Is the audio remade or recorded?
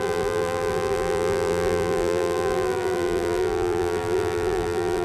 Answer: remade